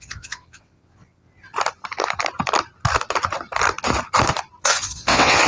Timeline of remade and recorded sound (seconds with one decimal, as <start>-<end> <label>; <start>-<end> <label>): 0.0-1.3 remade; 1.3-4.6 recorded; 4.6-5.5 remade